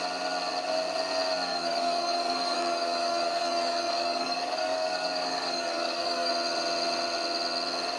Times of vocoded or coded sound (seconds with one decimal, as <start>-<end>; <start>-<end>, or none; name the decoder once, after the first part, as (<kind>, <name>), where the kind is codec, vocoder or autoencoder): 1.5-6.3 (codec, DAC)